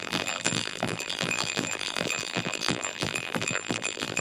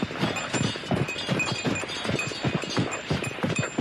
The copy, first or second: first